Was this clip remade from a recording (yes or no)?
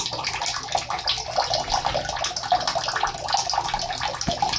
no